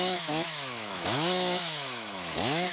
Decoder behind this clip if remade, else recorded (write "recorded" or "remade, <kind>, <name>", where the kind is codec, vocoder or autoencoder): remade, autoencoder, DAC-VAE